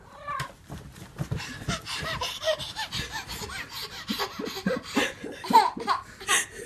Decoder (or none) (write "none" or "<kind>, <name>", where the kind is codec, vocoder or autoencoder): none